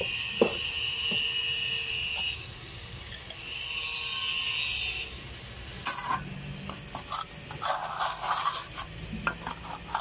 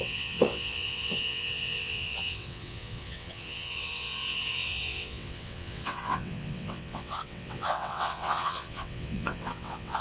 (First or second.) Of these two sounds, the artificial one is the second